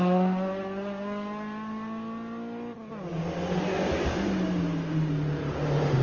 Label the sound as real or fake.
real